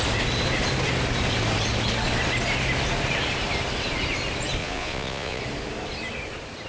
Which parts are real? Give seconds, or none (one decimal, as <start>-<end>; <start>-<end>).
0.0-4.6; 5.4-6.7